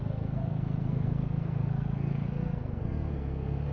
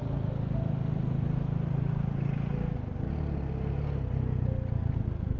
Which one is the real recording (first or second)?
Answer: second